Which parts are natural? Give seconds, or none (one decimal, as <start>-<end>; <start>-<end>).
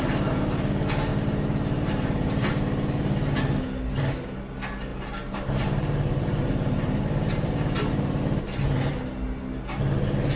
0.0-1.1; 2.5-4.9; 8.4-10.3